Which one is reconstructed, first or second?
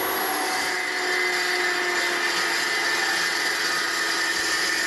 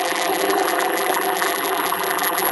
second